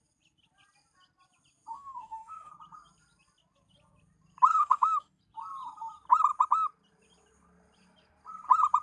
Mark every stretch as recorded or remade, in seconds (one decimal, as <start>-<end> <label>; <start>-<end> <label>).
0.0-1.7 recorded; 1.7-2.5 remade; 2.5-4.5 recorded; 4.5-5.2 remade; 5.2-8.8 recorded